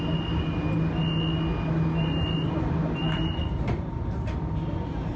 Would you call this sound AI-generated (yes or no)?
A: no